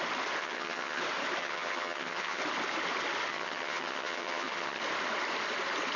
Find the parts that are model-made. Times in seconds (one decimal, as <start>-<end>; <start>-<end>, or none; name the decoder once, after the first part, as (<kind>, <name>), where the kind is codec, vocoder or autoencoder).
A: 0.4-1.0 (vocoder, HiFi-GAN); 1.4-2.4; 3.3-4.8